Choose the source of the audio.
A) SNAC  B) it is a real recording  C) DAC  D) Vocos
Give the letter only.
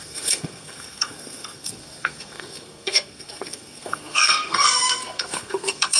A